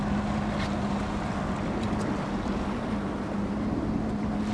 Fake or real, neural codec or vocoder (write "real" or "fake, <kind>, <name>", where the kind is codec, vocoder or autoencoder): real